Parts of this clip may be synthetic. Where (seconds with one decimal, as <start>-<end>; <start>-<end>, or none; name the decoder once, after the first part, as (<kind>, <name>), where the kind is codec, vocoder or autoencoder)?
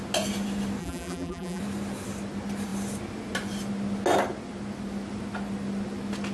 0.8-1.6 (vocoder, BigVGAN v2)